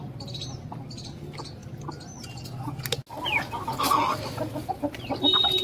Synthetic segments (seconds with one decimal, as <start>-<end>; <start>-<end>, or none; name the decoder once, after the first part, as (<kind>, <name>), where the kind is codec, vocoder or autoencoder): none